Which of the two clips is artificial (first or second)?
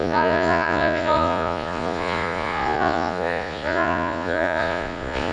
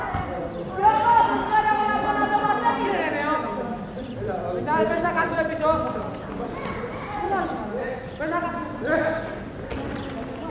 first